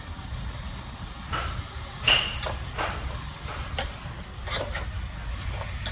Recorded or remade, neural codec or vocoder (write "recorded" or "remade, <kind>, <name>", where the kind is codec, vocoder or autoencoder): recorded